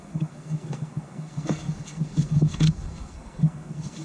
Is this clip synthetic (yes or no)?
yes